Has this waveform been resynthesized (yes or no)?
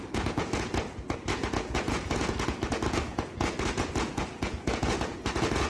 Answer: yes